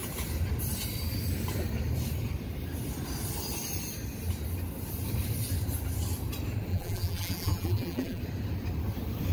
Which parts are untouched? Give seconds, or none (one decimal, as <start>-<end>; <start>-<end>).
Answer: 0.0-6.7; 8.2-9.3